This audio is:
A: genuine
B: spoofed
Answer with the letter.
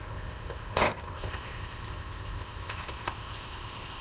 B